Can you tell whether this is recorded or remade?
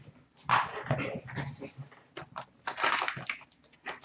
recorded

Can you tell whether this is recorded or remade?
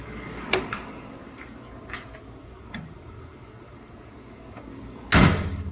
remade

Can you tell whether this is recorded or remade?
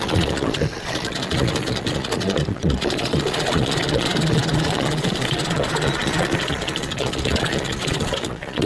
remade